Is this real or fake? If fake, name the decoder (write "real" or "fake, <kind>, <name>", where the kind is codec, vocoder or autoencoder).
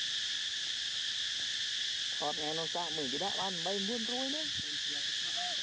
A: real